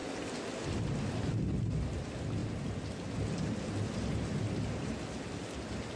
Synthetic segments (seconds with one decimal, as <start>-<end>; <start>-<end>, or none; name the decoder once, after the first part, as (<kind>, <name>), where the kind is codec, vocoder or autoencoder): none